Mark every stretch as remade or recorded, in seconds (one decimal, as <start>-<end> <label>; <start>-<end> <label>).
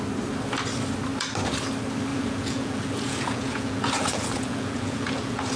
0.0-2.1 recorded; 2.1-5.6 remade